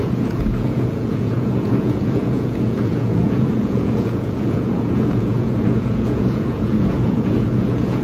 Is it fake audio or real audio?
fake